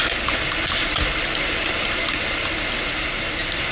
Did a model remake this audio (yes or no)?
no